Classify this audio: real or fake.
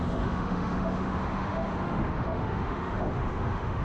fake